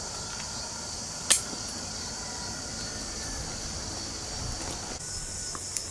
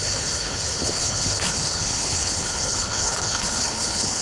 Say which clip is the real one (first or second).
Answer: first